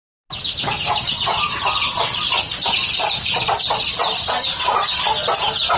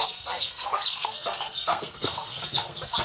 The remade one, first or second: second